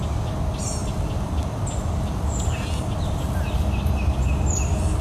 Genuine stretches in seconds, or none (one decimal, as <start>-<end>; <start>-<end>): 0.0-5.0